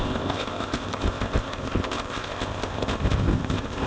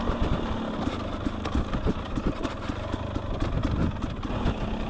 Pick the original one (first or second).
second